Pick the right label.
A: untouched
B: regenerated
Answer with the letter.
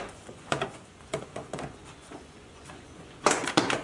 B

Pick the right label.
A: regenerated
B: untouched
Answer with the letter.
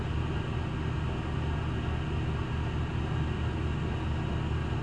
B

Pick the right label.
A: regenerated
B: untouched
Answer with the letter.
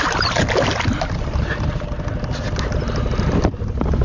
B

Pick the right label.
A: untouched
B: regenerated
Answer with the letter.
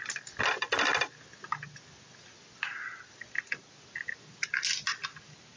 A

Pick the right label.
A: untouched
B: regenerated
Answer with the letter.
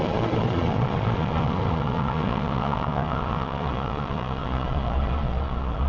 B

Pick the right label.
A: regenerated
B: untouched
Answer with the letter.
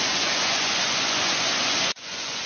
A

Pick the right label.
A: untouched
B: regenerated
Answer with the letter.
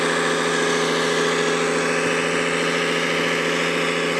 A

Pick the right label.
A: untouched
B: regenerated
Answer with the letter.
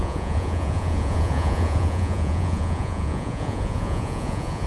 B